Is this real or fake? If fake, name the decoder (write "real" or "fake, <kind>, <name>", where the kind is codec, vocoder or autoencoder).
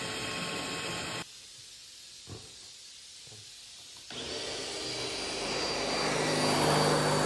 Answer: real